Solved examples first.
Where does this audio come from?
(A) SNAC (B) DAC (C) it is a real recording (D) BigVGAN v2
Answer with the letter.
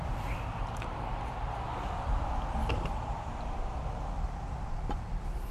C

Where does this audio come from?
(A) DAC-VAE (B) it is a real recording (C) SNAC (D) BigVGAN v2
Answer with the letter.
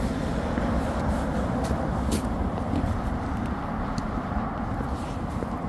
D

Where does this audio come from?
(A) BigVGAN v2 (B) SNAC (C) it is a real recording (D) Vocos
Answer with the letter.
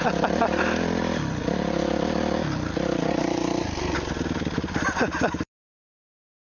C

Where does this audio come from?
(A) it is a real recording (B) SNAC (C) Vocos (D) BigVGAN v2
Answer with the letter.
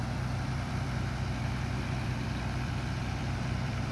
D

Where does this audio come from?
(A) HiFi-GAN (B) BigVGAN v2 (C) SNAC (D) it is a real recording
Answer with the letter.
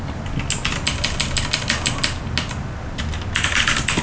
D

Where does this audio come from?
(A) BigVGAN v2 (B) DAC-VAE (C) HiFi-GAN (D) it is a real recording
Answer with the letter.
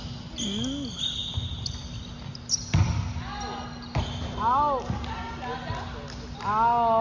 D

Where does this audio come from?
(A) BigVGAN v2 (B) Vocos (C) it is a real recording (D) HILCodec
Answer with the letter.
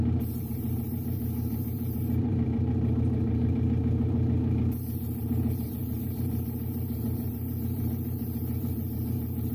A